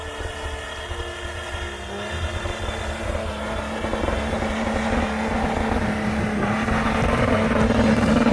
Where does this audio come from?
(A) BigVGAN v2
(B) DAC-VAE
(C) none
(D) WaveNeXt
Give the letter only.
C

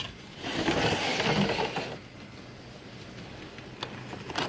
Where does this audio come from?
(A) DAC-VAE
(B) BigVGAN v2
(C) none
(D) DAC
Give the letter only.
C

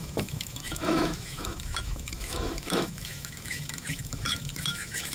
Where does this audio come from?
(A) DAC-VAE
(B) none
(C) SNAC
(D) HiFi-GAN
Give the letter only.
A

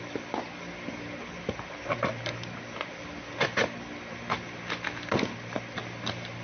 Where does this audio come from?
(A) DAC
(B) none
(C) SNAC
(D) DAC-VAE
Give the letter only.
B